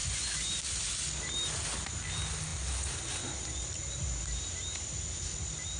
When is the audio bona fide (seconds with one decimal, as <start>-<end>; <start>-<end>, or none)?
0.5-5.8